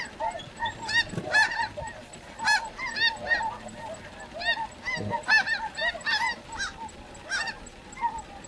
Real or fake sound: real